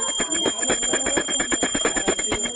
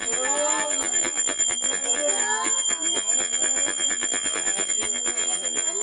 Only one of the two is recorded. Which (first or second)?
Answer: first